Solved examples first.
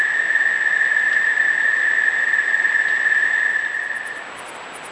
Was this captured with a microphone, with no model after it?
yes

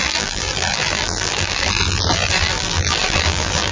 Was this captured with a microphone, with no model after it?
no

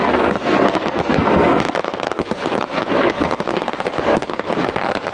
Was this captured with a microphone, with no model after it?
no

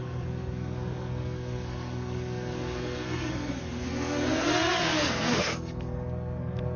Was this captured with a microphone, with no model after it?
no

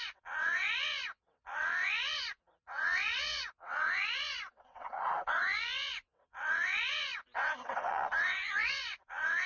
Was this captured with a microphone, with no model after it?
no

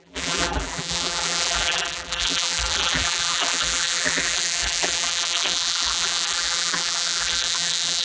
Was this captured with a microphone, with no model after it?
no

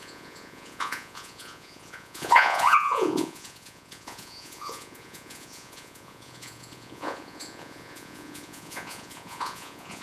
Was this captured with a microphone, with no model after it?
no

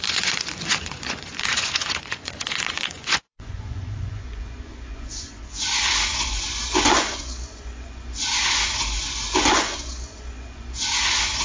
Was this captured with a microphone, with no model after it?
no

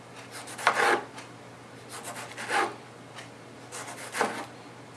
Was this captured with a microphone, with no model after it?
yes